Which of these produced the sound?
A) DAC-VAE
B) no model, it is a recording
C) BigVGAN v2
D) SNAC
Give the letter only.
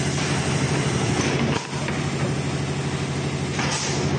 B